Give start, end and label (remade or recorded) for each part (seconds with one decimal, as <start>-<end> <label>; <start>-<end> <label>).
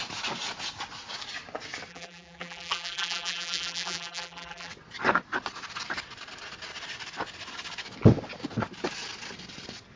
0.0-1.9 recorded; 1.9-4.7 remade; 4.7-10.0 recorded